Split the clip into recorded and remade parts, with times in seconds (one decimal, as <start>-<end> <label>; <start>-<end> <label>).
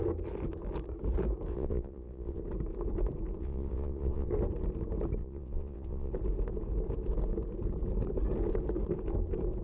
0.0-1.5 recorded; 1.5-2.4 remade; 2.4-3.4 recorded; 3.4-4.3 remade; 4.3-5.2 recorded; 5.2-6.1 remade; 6.1-9.6 recorded